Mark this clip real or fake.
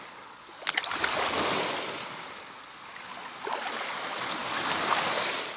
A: real